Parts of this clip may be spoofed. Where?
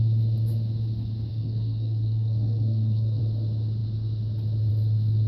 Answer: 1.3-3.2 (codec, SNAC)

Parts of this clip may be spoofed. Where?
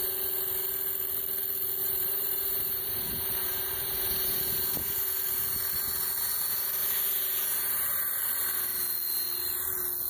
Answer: 1.8-5.8 (vocoder, BigVGAN v2); 6.8-8.1